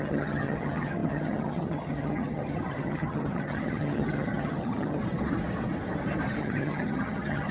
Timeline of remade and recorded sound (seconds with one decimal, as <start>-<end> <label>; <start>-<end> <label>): 0.0-5.0 remade; 5.0-6.4 recorded; 6.4-7.5 remade